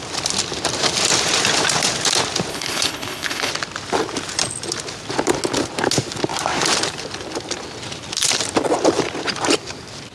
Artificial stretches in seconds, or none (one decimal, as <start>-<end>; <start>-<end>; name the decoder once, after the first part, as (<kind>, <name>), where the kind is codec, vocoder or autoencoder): 2.5-3.5 (codec, HILCodec)